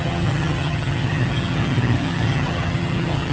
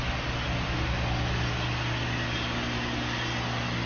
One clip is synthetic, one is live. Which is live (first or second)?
second